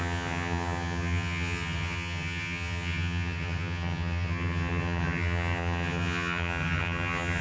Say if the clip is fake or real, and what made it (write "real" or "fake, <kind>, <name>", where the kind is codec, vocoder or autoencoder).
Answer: fake, vocoder, HiFi-GAN